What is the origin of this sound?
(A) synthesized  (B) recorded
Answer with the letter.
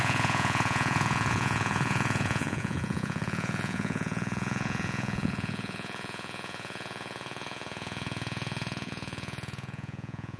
A